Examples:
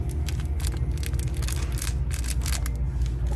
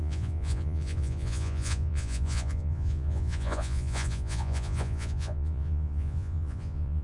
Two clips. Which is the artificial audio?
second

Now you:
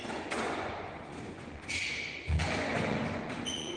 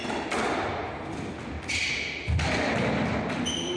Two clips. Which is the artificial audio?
first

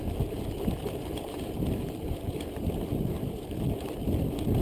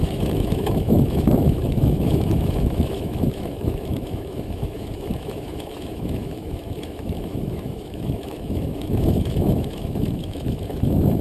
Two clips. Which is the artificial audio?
second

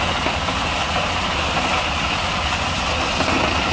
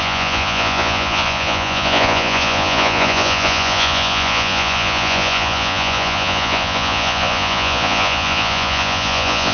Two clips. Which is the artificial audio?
second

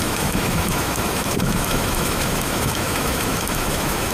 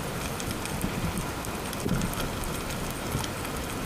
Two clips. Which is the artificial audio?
first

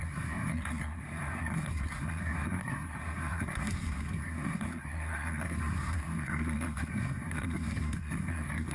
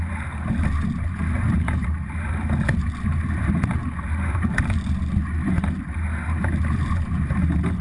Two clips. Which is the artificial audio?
first